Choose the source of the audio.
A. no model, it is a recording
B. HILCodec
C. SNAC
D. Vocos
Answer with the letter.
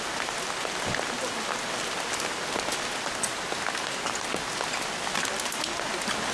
A